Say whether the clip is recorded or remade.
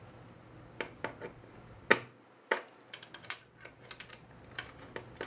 recorded